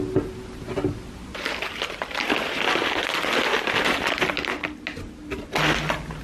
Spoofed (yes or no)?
no